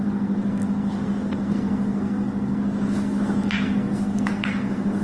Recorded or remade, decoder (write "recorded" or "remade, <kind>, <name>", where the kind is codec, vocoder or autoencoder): remade, codec, SNAC